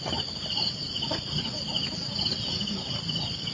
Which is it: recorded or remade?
recorded